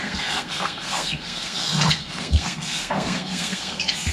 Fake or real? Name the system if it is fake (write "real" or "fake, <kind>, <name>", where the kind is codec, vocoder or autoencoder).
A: fake, codec, SNAC